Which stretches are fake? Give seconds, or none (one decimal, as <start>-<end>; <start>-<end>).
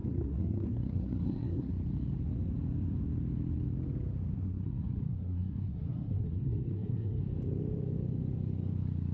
0.0-1.7; 4.3-7.2